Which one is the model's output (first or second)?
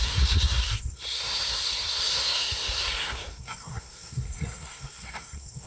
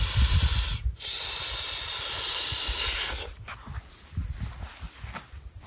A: first